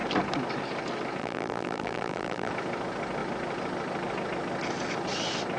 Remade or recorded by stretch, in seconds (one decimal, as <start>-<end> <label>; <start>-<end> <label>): 0.0-1.2 recorded; 1.2-2.5 remade; 2.5-5.6 recorded